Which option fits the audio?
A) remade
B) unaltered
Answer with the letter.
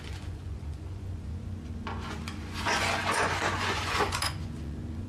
A